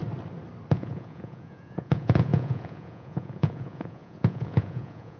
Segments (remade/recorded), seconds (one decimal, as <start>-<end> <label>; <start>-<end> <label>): 0.0-0.7 recorded; 0.7-5.2 remade